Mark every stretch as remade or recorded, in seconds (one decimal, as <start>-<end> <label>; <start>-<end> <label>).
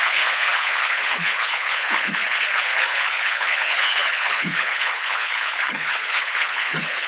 0.0-7.1 remade